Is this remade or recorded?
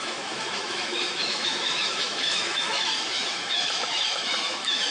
remade